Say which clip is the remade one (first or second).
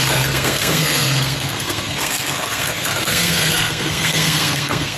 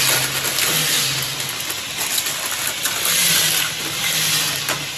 first